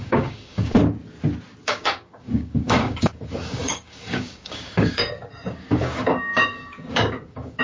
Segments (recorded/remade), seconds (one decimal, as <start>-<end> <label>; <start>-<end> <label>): 0.0-0.8 remade; 0.8-1.6 recorded; 1.6-7.6 remade